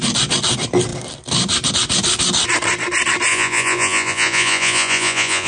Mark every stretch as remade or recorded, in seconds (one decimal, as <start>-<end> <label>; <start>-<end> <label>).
0.0-3.3 recorded; 3.3-5.5 remade